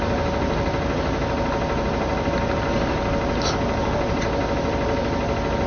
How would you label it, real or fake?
real